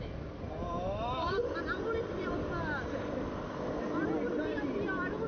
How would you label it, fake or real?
real